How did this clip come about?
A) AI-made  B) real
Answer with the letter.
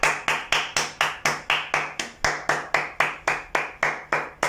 B